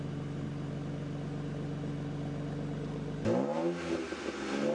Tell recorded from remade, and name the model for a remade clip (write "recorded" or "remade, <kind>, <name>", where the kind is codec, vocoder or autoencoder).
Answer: recorded